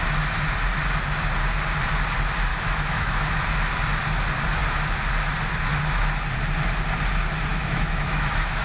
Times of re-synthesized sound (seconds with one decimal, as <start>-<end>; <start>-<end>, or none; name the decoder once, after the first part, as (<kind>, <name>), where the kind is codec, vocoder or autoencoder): 2.5-3.4 (autoencoder, DAC-VAE); 7.5-8.6